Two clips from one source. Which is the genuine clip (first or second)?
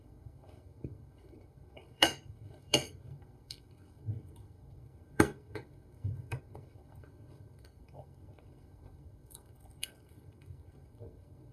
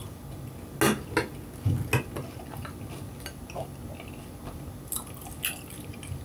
second